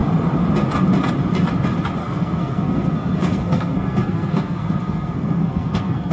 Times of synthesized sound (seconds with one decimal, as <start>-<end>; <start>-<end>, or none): 2.0-6.1